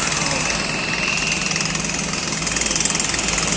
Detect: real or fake real